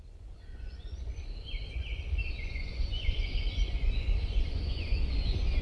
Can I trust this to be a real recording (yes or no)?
no